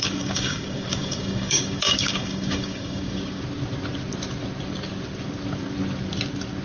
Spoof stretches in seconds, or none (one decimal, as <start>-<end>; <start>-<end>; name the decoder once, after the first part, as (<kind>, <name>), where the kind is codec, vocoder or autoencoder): 0.0-3.4 (codec, DAC)